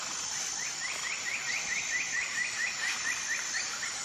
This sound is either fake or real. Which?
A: real